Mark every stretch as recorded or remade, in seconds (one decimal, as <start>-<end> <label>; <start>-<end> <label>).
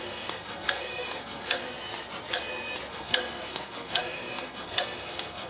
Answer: 0.0-1.6 remade; 1.6-2.9 recorded; 2.9-5.5 remade